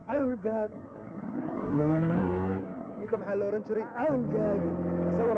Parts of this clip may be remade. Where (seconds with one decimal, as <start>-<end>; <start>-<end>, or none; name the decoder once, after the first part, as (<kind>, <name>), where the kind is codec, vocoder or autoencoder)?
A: 0.0-3.2 (codec, SNAC)